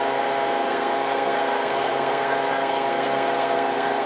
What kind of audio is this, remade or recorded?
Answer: remade